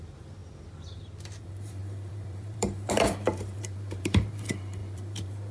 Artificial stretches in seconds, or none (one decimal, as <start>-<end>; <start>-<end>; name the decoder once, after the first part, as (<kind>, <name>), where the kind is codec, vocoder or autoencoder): 0.0-0.4 (vocoder, BigVGAN v2); 1.4-5.5